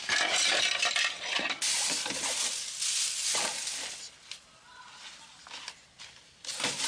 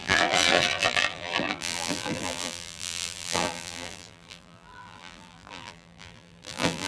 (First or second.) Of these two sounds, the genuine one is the first